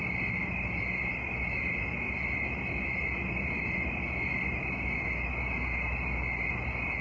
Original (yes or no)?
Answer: yes